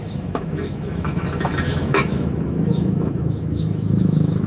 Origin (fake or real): fake